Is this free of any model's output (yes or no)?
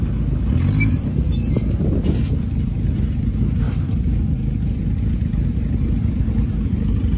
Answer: no